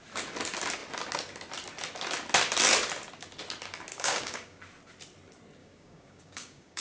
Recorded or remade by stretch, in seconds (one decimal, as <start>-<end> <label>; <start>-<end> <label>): 0.0-3.9 recorded; 3.9-4.6 remade; 4.6-5.6 recorded; 5.6-6.8 remade